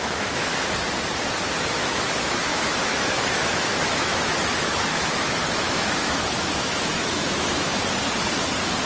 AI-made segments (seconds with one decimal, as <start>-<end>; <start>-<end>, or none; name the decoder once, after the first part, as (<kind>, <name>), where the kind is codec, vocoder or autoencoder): 0.0-0.5 (autoencoder, DAC-VAE); 1.6-7.7

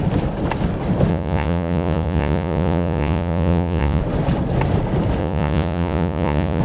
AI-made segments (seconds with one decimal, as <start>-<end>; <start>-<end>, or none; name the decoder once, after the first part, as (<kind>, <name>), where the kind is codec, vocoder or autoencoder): 1.1-4.0 (vocoder, Vocos); 5.2-6.6

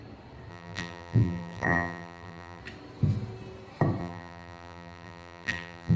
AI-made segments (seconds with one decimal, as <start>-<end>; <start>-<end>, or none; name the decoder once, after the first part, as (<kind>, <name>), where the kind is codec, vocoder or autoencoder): 0.5-2.6 (vocoder, BigVGAN v2); 4.0-6.0